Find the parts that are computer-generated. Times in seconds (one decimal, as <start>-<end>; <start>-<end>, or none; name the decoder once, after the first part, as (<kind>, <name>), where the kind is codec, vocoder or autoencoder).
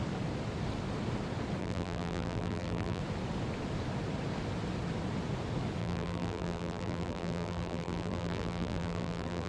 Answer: 1.6-3.0 (vocoder, BigVGAN v2); 5.8-9.5